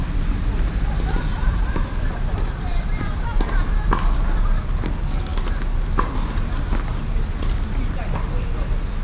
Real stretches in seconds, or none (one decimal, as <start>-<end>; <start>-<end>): 0.0-1.3; 4.4-9.0